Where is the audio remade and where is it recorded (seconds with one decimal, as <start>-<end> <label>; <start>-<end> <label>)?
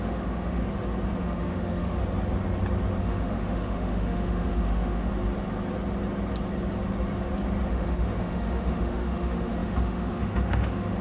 0.0-0.6 remade; 0.6-1.2 recorded; 1.2-2.0 remade; 2.0-3.0 recorded; 3.0-5.1 remade; 5.1-7.7 recorded; 7.7-11.0 remade